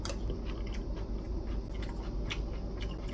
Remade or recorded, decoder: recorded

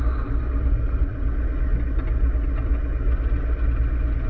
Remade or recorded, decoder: recorded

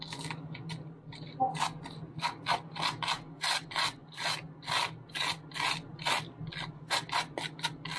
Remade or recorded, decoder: recorded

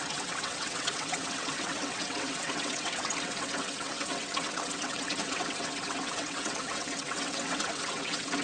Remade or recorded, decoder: remade, vocoder, WaveNeXt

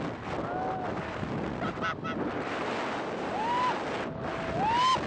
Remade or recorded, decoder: recorded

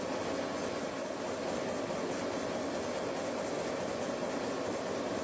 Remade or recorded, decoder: recorded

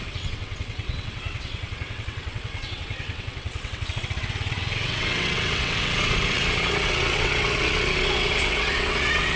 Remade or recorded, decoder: remade, vocoder, WaveNeXt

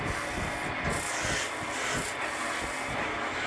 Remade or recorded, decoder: recorded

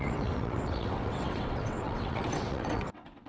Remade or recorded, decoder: remade, vocoder, WaveNeXt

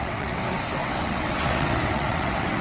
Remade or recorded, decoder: remade, vocoder, WaveNeXt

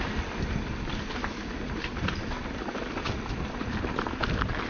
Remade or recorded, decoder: recorded